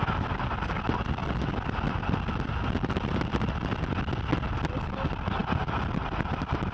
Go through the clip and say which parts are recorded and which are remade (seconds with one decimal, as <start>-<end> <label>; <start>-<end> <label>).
0.0-6.7 recorded